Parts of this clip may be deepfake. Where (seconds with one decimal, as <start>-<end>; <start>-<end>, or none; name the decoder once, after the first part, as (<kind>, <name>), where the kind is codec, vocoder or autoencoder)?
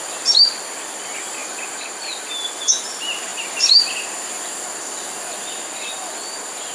none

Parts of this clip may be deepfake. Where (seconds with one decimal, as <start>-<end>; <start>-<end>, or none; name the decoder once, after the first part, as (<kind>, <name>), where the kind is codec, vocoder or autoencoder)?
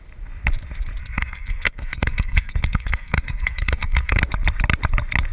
1.0-4.2 (codec, SNAC)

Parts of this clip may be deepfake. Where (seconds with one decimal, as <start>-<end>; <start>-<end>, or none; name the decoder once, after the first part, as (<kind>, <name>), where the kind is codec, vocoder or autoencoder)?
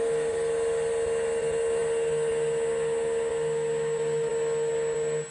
none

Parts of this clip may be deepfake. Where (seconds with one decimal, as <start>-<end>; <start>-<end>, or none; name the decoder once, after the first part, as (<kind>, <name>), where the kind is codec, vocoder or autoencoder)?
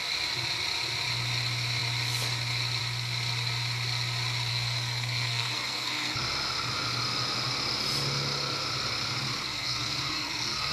4.5-6.2 (codec, SNAC); 9.5-10.7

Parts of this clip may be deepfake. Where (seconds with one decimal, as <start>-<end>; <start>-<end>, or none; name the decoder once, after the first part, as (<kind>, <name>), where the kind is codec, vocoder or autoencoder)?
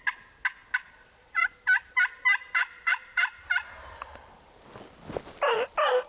none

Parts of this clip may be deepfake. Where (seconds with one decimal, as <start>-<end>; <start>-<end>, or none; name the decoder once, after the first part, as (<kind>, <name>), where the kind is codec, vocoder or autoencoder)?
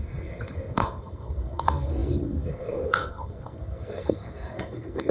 0.0-5.1 (codec, SNAC)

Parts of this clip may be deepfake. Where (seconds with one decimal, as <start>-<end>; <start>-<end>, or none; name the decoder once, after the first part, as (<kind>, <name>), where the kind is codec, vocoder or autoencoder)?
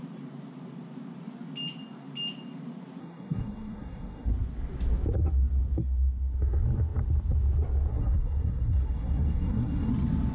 3.0-4.3 (codec, SNAC); 7.9-9.9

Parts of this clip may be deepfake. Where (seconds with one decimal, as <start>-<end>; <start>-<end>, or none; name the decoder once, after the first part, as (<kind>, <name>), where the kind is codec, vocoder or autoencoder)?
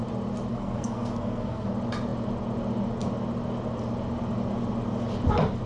0.5-1.7 (codec, SNAC)